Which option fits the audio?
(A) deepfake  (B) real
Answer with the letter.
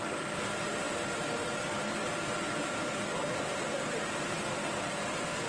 A